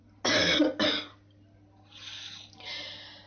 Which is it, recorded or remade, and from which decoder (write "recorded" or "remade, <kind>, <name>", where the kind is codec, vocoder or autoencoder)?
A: recorded